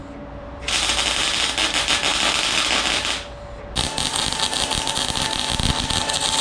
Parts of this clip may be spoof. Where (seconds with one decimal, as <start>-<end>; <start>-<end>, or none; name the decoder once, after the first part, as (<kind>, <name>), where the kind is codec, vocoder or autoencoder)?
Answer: none